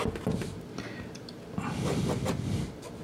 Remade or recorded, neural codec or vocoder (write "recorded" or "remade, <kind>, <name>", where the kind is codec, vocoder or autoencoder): recorded